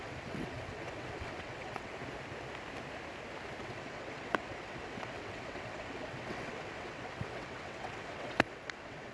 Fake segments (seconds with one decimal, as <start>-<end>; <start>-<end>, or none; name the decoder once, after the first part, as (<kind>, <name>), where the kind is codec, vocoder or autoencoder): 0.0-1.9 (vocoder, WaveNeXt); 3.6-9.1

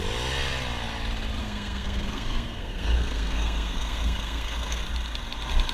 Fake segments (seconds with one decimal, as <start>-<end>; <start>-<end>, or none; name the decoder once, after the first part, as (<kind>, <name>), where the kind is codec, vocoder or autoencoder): 1.4-4.8 (codec, SNAC)

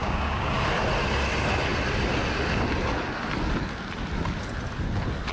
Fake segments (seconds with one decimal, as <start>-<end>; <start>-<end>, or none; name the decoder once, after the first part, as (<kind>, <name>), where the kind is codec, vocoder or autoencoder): 0.0-0.5 (codec, DAC)

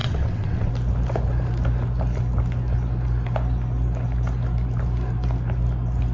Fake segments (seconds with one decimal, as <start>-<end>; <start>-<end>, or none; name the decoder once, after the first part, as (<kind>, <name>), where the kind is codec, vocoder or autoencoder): 0.0-0.7 (vocoder, WaveNeXt)

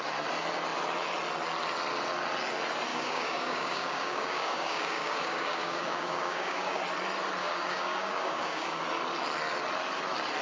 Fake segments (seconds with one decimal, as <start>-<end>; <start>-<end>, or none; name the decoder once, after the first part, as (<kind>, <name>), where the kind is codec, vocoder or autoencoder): 2.9-6.8 (codec, DAC); 7.4-8.8

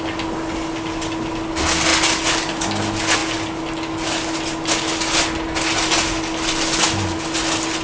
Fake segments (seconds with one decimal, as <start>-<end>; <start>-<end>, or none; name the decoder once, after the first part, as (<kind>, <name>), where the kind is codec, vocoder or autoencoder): none